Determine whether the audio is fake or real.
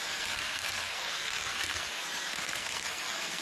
fake